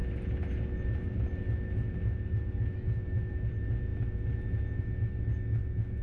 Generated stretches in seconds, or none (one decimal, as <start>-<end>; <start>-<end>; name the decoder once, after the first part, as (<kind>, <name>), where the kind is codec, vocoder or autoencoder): none